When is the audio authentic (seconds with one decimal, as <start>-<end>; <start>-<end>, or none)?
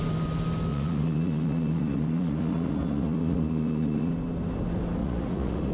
0.0-0.7; 4.1-5.0